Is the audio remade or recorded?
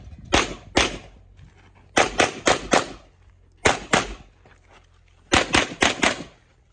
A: recorded